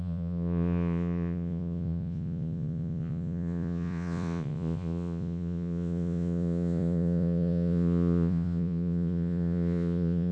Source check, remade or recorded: remade